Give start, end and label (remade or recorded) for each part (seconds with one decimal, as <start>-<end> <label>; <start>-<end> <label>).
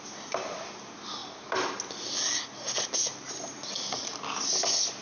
0.0-5.0 recorded